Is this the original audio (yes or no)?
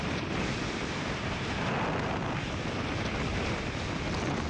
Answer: yes